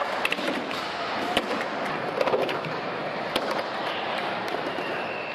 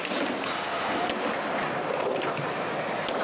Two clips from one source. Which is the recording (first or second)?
second